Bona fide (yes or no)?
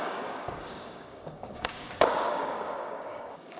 no